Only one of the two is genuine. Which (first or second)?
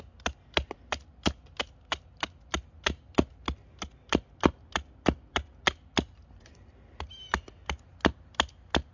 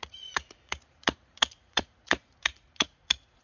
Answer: first